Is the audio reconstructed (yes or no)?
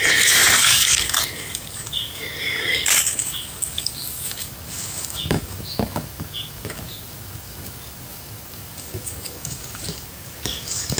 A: yes